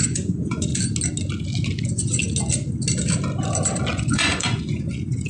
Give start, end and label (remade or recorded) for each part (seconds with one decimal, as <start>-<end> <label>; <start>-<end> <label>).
0.0-0.7 remade; 0.7-1.8 recorded; 1.8-2.2 remade; 2.2-3.9 recorded; 3.9-5.3 remade